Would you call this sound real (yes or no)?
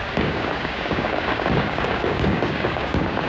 no